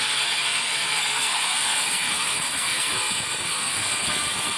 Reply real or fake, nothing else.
fake